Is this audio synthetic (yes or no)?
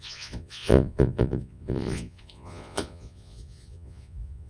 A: yes